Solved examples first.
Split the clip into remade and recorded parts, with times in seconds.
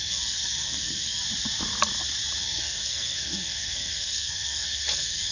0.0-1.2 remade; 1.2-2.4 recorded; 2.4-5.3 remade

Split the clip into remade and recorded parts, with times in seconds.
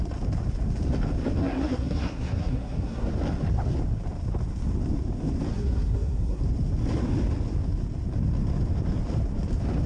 0.0-1.4 recorded; 1.4-3.1 remade; 3.1-5.5 recorded; 5.5-6.4 remade; 6.4-9.9 recorded